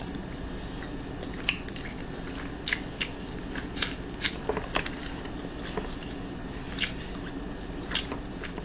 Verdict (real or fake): real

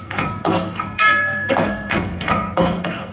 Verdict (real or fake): fake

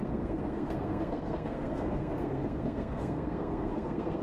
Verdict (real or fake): fake